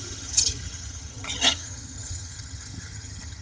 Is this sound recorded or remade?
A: remade